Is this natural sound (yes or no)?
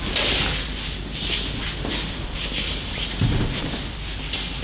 yes